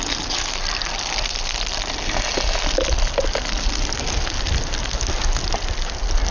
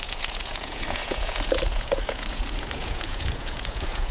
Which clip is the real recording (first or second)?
first